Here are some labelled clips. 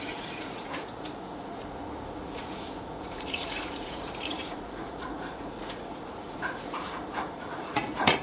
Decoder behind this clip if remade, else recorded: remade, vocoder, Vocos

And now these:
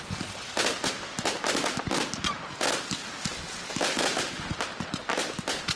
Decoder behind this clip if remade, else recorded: recorded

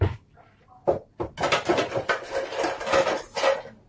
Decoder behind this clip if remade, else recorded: recorded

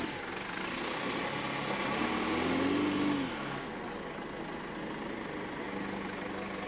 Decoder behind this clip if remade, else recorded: recorded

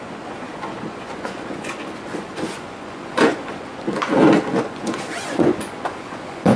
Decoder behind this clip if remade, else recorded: remade, vocoder, Vocos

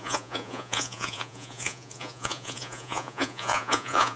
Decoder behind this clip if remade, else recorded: remade, vocoder, Vocos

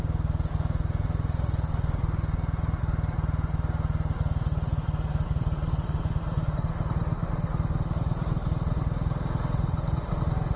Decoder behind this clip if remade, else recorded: recorded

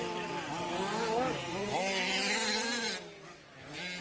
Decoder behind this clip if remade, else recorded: recorded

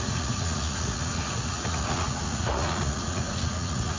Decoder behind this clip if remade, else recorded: remade, vocoder, Vocos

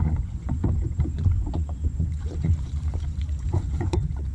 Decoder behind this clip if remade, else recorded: remade, vocoder, Vocos